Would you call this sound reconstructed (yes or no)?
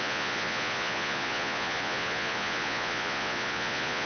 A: yes